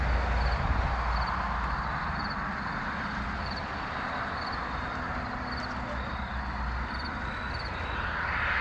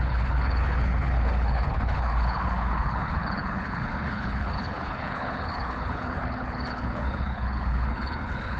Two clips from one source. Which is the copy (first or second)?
second